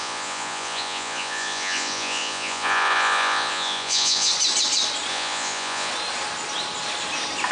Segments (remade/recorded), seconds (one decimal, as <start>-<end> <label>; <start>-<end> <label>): 0.0-4.3 remade; 4.3-5.1 recorded; 5.1-5.9 remade; 5.9-7.5 recorded